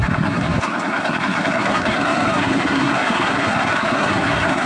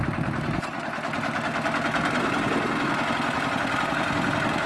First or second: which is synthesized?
first